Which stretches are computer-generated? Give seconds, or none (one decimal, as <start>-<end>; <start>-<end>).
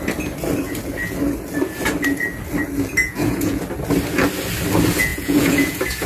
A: 3.0-3.6; 5.1-6.1